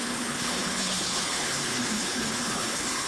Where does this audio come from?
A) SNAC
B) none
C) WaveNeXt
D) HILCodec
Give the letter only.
D